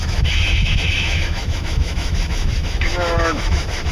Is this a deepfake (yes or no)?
yes